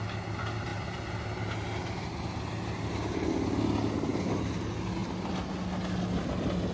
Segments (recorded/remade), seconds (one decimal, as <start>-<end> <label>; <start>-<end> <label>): 0.0-5.0 recorded; 5.0-5.5 remade; 5.5-6.7 recorded